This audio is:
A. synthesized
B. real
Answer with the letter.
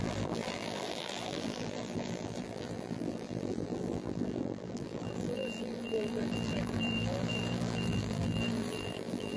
A